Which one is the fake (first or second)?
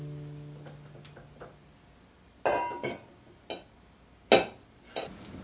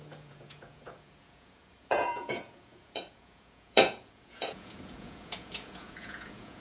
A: second